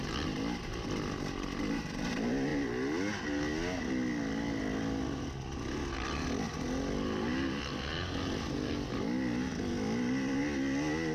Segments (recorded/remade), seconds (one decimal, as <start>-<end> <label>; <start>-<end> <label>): 0.0-11.1 recorded